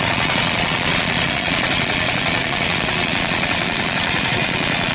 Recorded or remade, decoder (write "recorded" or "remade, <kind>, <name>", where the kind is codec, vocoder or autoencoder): remade, vocoder, Vocos